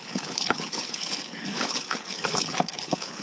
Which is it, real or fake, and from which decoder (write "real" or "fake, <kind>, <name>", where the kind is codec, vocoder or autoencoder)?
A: fake, codec, HILCodec